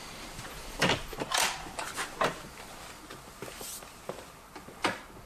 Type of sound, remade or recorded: recorded